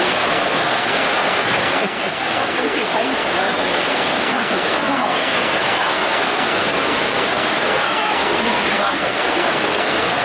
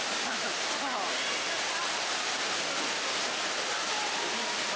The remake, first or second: first